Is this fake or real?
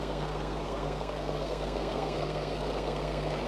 fake